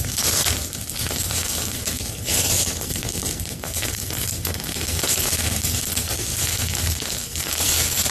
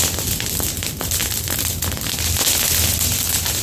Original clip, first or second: second